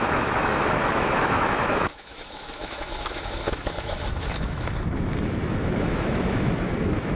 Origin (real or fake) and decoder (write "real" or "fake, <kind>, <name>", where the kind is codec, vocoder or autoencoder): fake, autoencoder, DAC-VAE